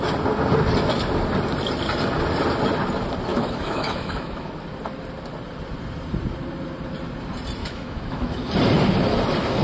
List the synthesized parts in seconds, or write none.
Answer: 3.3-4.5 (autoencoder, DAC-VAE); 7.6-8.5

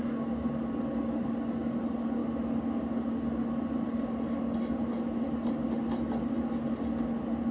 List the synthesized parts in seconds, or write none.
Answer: none

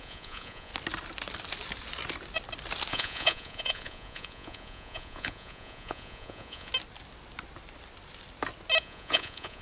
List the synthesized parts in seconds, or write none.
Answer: 0.0-0.7 (vocoder, Vocos); 2.9-6.7; 8.8-9.6

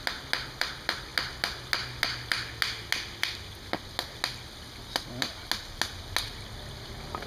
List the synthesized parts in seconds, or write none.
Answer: none

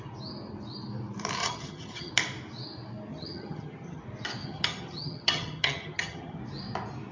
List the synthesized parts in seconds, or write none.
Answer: 1.4-2.1 (vocoder, HiFi-GAN); 3.1-4.0; 4.4-6.4

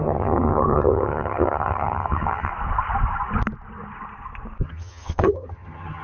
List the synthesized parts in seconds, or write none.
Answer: 0.0-2.5 (vocoder, HiFi-GAN); 4.6-6.0

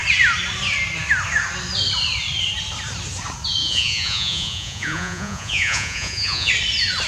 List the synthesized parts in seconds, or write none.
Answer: 3.6-6.5 (vocoder, Vocos)